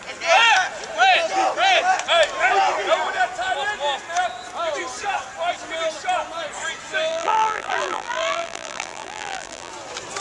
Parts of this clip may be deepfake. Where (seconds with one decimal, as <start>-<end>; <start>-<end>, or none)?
7.1-9.7